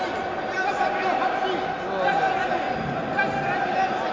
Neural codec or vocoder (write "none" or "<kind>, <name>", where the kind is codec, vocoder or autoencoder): none